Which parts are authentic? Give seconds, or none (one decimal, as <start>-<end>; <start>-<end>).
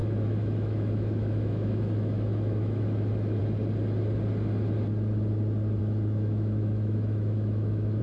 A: 3.4-5.8